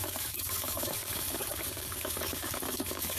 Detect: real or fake fake